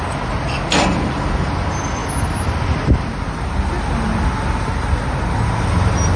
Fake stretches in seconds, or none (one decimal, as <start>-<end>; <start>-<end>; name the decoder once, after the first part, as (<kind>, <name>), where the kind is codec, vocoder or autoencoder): none